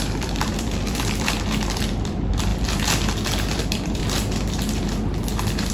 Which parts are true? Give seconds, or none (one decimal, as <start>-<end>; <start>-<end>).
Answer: 2.5-3.6; 4.0-5.7